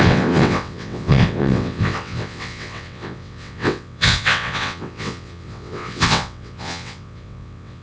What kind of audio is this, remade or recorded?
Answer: remade